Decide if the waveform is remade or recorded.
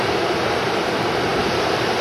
remade